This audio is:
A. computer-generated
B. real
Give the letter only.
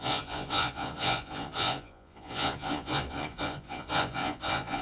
A